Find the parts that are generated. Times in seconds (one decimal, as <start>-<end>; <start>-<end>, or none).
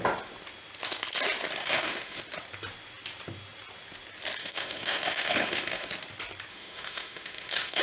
1.6-2.2; 4.4-5.9; 6.5-7.8